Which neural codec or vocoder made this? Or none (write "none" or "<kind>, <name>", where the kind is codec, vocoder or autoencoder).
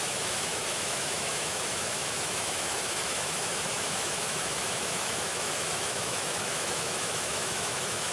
autoencoder, DAC-VAE